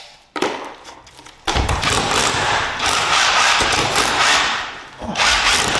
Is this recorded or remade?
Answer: remade